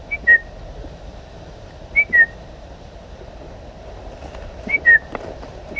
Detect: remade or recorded remade